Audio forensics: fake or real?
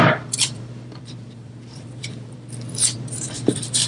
fake